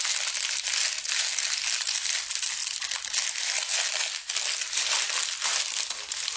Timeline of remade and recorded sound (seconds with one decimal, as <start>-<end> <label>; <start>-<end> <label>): 0.0-6.4 recorded